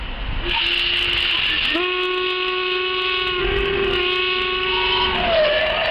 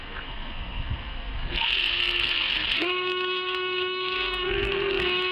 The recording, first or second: first